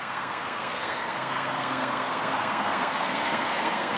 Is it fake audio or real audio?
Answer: fake